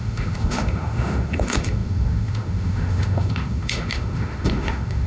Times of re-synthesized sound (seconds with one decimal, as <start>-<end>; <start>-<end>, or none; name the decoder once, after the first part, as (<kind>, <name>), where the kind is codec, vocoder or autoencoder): 0.0-5.1 (autoencoder, DAC-VAE)